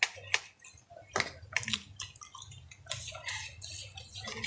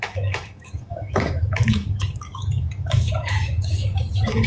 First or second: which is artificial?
second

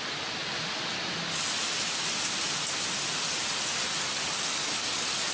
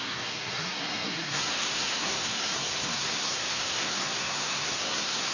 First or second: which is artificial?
second